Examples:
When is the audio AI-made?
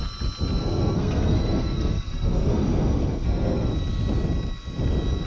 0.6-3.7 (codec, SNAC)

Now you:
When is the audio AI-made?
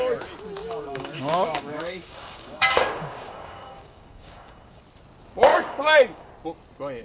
0.6-4.8 (codec, DAC); 5.5-6.3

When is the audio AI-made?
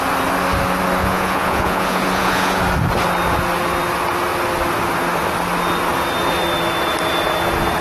1.0-2.6 (vocoder, Vocos)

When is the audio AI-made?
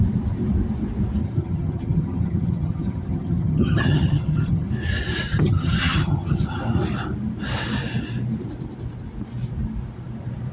1.2-4.7 (vocoder, HiFi-GAN); 5.3-6.6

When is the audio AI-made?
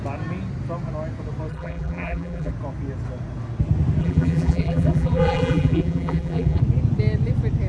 1.5-2.5 (vocoder, BigVGAN v2); 4.0-6.6